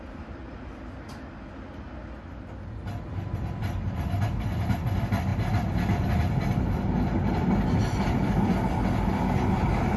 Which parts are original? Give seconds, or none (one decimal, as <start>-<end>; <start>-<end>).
0.0-10.0